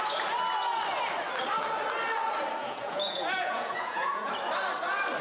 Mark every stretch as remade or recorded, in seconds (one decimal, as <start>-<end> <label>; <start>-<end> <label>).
0.0-2.6 recorded; 2.6-4.3 remade; 4.3-5.2 recorded